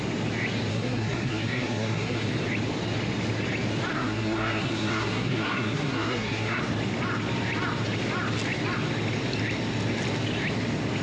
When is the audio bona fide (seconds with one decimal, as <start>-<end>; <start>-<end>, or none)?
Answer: 0.0-0.7; 2.3-3.9; 6.6-11.0